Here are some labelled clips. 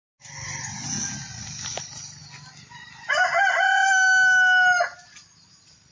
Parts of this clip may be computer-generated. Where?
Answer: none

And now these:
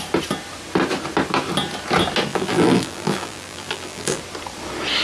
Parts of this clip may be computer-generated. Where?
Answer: 2.3-4.2 (vocoder, BigVGAN v2)

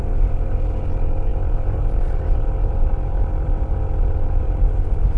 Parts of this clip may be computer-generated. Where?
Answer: 1.3-4.4 (vocoder, BigVGAN v2)

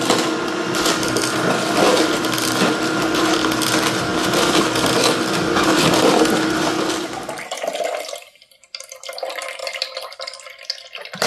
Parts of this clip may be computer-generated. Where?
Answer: none

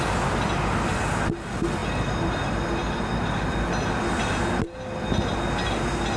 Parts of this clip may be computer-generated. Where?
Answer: none

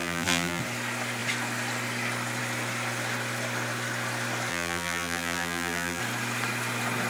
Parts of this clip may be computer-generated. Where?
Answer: 0.0-0.6 (vocoder, BigVGAN v2); 4.5-6.0